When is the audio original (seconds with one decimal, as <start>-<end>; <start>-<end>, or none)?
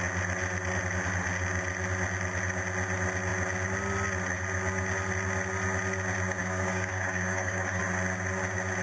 0.0-6.4; 7.8-8.8